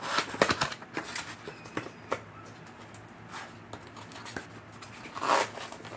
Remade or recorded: recorded